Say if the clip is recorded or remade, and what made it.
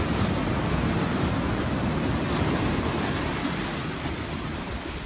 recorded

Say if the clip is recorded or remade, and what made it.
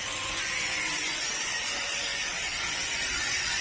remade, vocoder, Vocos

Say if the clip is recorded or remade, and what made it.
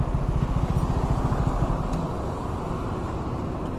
recorded